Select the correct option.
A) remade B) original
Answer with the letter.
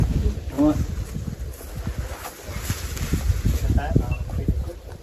B